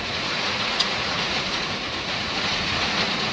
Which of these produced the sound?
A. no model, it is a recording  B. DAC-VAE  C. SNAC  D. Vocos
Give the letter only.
D